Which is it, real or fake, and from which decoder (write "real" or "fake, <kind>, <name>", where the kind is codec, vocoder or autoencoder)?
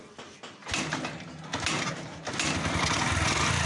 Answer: real